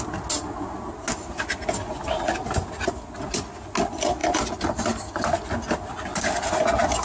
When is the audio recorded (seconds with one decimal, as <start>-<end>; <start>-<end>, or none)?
0.0-4.2; 5.4-7.0